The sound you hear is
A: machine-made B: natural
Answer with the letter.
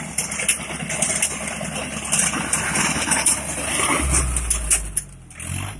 B